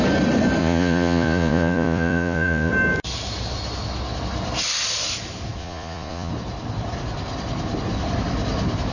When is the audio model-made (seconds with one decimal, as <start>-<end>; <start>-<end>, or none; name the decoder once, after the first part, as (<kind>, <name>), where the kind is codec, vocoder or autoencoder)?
0.6-2.7 (vocoder, Vocos); 5.6-6.3